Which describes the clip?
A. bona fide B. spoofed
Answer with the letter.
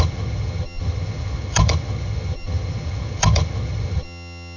B